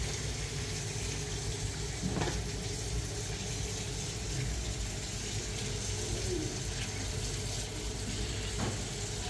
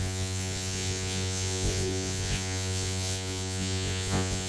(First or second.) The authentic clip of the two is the first